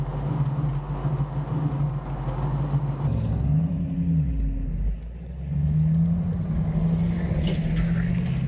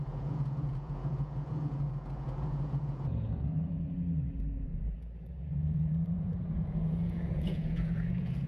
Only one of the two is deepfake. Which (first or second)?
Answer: second